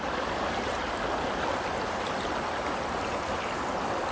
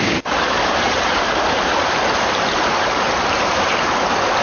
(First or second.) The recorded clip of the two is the first